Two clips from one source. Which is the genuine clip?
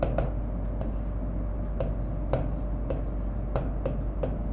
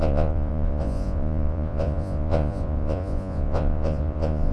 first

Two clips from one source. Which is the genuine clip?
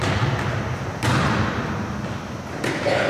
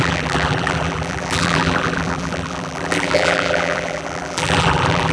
first